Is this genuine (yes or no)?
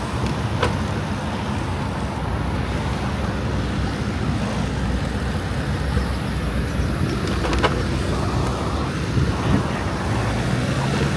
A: yes